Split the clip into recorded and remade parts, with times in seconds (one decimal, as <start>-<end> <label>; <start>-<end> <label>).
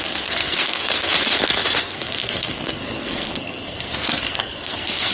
0.0-5.1 remade